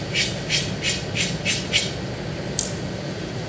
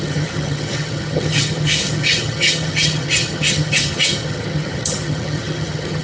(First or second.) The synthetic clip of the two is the second